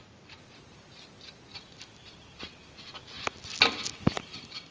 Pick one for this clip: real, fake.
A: real